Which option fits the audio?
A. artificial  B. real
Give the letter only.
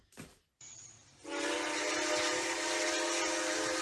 B